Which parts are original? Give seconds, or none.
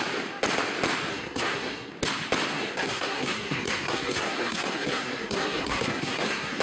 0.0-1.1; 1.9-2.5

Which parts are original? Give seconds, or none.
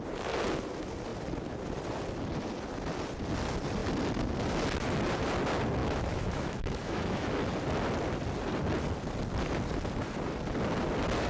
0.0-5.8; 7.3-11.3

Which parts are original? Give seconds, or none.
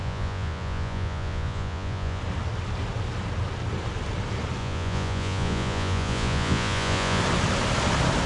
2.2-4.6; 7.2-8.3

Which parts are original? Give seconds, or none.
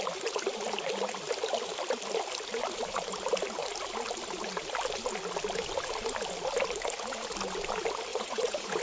0.0-8.1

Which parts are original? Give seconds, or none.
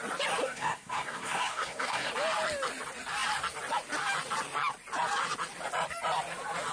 0.0-0.4; 2.1-6.7